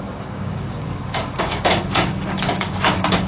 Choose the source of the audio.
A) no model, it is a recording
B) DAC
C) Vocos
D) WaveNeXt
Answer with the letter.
B